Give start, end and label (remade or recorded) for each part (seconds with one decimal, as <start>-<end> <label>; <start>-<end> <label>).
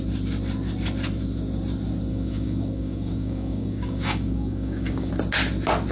0.0-2.1 recorded; 2.1-5.1 remade; 5.1-5.9 recorded